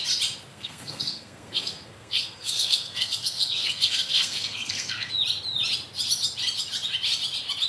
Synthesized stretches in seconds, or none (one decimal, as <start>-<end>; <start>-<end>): 0.5-5.1